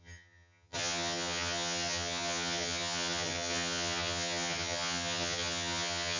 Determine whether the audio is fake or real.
fake